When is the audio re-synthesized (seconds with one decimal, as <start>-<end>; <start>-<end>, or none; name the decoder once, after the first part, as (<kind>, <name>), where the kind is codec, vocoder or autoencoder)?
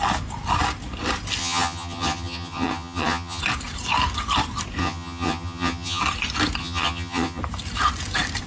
1.4-3.4 (vocoder, HiFi-GAN); 4.8-6.0; 6.6-7.4